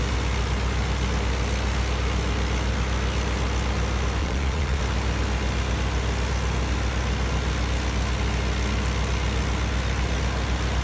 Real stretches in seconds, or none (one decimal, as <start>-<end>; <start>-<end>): 0.0-4.2; 4.8-10.8